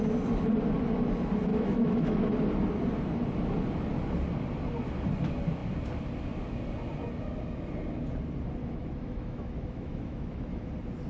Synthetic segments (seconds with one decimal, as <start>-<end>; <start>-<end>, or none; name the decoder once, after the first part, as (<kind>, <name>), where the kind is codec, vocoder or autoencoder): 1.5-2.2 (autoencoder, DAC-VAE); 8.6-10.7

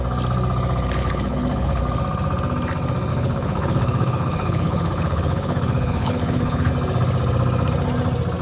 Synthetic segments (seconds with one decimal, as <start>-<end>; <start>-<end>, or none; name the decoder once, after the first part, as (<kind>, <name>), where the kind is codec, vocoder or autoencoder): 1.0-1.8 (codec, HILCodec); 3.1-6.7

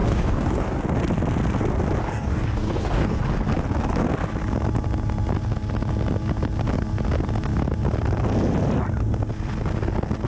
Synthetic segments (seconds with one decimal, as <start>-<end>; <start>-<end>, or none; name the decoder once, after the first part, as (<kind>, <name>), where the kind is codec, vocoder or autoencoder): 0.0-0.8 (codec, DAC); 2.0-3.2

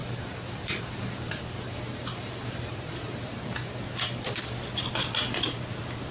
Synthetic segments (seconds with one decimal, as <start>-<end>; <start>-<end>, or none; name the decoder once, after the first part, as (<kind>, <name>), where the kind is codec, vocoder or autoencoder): 0.0-3.7 (vocoder, BigVGAN v2)

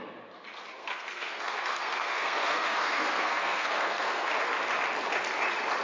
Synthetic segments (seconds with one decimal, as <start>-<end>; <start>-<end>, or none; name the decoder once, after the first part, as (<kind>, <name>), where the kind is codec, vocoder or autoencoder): 0.8-4.3 (codec, SNAC)

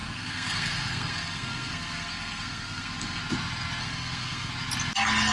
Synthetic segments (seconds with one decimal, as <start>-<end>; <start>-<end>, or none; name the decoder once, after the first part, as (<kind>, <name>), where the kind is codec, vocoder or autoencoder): 0.0-3.2 (codec, SNAC); 3.8-4.5